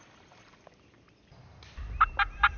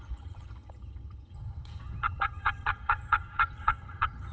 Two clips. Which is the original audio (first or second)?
first